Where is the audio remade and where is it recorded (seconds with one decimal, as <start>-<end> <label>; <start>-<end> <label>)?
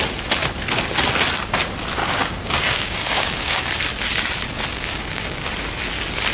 0.0-2.0 recorded; 2.0-3.7 remade; 3.7-4.7 recorded; 4.7-5.5 remade; 5.5-6.3 recorded